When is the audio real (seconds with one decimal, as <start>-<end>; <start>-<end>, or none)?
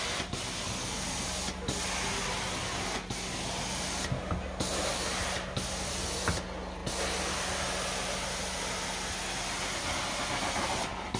0.0-11.2